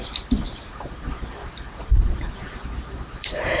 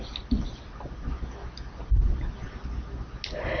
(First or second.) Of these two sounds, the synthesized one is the first